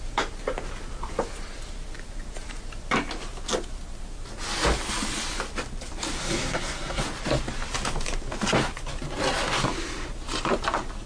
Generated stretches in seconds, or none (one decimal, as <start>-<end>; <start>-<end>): 6.2-7.0